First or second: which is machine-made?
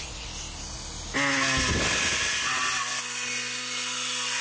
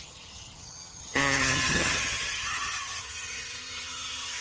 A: second